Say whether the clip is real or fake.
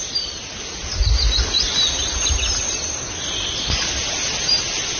real